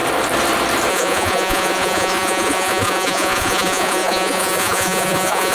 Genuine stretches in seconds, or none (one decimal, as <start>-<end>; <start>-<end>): 0.0-0.9